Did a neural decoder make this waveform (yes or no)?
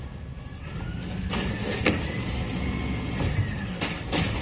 no